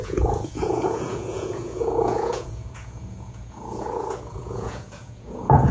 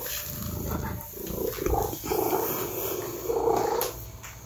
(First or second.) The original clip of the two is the second